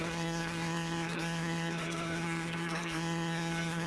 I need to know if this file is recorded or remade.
remade